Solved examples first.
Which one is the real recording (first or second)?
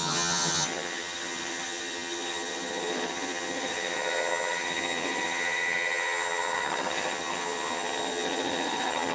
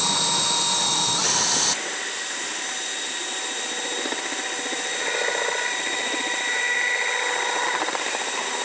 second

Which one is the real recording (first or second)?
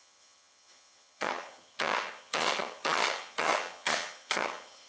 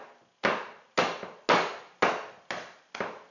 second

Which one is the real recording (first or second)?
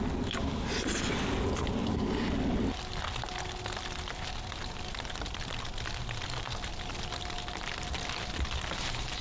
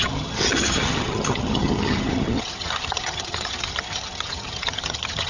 first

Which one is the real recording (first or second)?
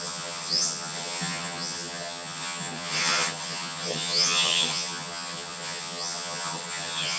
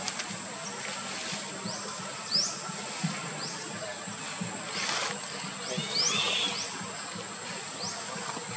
second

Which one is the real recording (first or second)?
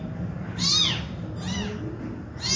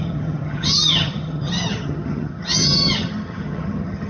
first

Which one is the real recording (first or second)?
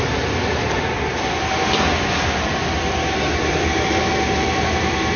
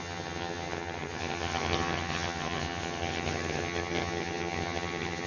first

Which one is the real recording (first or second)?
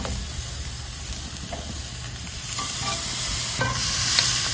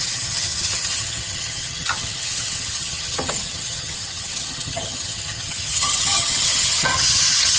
first